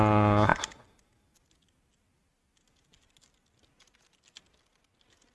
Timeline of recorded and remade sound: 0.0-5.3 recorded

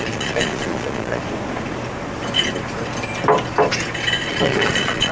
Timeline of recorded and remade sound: 0.0-1.2 remade; 1.2-4.3 recorded; 4.3-5.1 remade

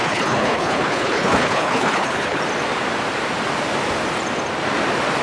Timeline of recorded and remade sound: 0.0-2.4 remade; 2.4-5.2 recorded